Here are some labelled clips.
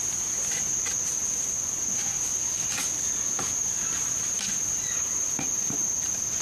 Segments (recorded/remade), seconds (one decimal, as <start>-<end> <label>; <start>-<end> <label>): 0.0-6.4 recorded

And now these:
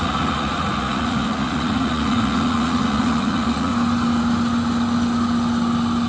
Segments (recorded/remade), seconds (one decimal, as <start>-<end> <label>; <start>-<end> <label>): 0.0-3.7 remade; 3.7-6.1 recorded

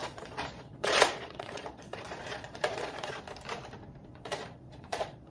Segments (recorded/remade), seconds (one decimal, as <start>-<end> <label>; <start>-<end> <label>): 0.0-3.2 remade; 3.2-4.1 recorded; 4.1-5.3 remade

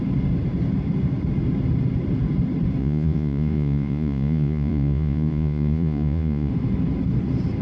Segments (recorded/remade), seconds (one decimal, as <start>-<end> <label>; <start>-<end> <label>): 0.0-2.8 recorded; 2.8-6.5 remade; 6.5-7.6 recorded

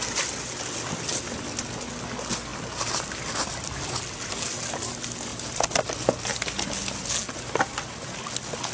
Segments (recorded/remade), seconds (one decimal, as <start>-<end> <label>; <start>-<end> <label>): 0.0-8.7 recorded

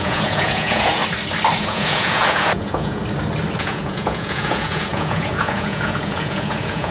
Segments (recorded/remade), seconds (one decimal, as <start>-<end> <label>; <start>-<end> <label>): 0.0-1.0 remade; 1.0-1.6 recorded; 1.6-3.0 remade; 3.0-3.6 recorded; 3.6-6.9 remade

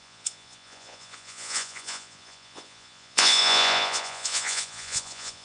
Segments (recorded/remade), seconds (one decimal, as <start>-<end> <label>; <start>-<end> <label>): 0.0-5.4 remade